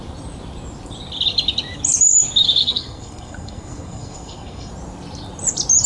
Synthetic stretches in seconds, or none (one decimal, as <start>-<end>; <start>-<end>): 2.6-4.7